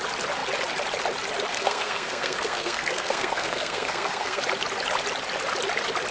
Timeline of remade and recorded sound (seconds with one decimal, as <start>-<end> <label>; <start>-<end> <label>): 0.0-1.5 recorded; 1.5-4.4 remade; 4.4-6.1 recorded